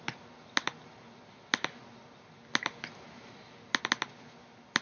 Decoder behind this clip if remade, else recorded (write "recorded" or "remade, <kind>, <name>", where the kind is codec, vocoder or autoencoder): recorded